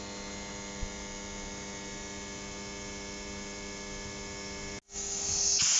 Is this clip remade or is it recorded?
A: recorded